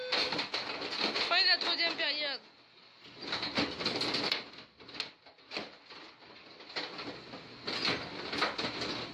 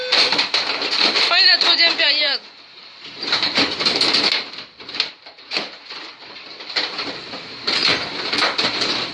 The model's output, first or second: second